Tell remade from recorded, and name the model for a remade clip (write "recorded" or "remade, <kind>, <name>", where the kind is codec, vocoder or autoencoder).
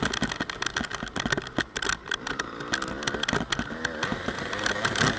recorded